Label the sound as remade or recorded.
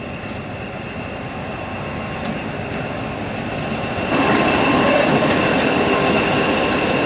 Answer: recorded